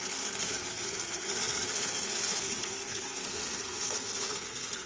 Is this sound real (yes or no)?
no